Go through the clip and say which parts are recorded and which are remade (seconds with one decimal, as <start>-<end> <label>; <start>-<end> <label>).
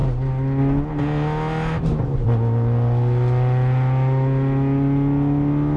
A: 0.0-5.8 recorded